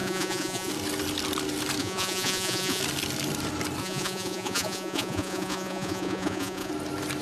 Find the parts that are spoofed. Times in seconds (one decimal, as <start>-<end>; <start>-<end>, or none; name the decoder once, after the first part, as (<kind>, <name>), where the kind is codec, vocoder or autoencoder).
0.0-0.7 (vocoder, Vocos); 1.8-2.8; 3.8-6.7

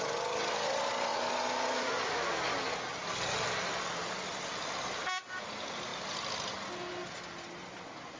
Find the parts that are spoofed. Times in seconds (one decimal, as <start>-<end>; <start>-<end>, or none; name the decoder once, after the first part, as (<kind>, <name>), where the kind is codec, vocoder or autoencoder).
none

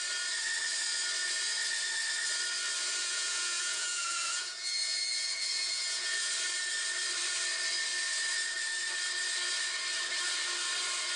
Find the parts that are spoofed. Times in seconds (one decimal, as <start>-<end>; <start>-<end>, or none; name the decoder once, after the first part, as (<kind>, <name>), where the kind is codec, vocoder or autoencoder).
3.0-6.3 (vocoder, Vocos)

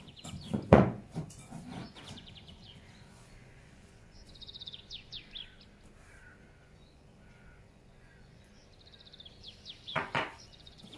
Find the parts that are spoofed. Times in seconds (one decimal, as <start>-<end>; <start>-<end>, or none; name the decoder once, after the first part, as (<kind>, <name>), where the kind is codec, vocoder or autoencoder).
0.0-5.2 (vocoder, Vocos); 6.6-8.6; 9.8-11.0

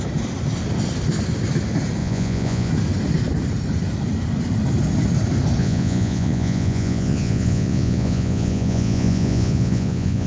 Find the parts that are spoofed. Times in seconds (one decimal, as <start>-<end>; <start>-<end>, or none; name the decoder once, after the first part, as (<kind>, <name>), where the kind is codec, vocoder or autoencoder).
2.0-2.7 (vocoder, Vocos); 5.6-10.3